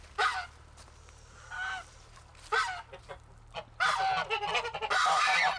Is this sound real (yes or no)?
yes